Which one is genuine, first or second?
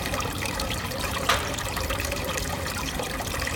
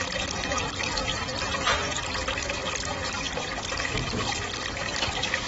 second